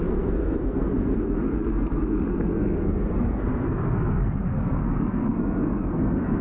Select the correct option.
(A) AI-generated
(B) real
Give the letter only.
A